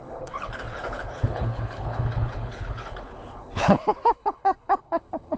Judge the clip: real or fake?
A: fake